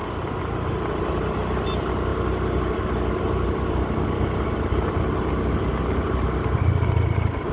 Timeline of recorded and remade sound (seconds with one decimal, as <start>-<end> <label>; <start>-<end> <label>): 0.0-7.5 recorded